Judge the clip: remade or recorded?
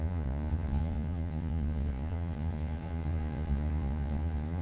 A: remade